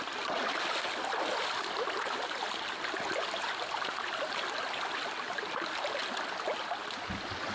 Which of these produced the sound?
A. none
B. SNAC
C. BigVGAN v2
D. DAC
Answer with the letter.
A